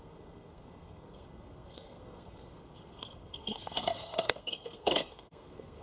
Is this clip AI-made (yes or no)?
yes